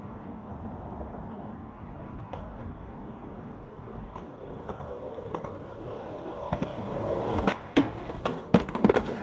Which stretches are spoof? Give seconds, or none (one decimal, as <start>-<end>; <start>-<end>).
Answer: 0.0-0.5; 1.3-9.2